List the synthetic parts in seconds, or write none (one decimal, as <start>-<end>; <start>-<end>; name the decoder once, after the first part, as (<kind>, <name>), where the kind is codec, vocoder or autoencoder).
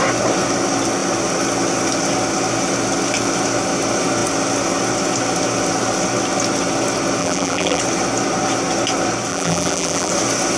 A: 7.2-7.8 (vocoder, BigVGAN v2); 9.3-10.1